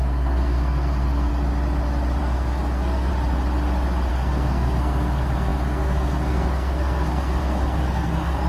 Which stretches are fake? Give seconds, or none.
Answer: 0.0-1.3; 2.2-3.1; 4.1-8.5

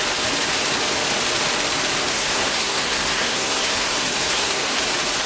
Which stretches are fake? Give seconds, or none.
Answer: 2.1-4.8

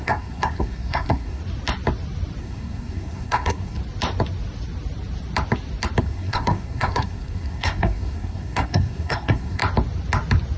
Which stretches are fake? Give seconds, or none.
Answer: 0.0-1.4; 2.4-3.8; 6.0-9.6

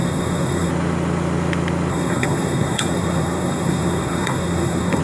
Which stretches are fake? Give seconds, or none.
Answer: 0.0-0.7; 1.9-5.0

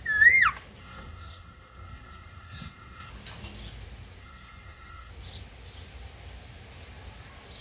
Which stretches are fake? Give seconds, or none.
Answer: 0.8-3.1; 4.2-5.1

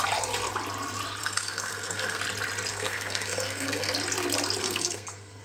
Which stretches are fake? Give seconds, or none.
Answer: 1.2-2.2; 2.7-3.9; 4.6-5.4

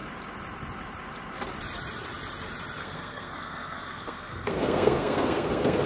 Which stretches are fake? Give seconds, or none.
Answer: 2.8-5.9

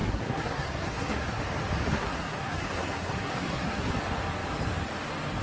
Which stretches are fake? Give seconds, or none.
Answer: 0.0-1.4; 1.9-3.9